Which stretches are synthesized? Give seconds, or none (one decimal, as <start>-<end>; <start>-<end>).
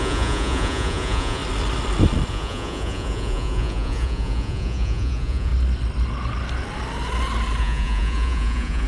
0.0-1.4; 2.3-5.5; 7.6-8.9